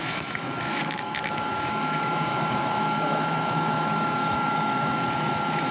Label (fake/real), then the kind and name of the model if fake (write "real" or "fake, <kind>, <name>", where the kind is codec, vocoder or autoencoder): fake, autoencoder, DAC-VAE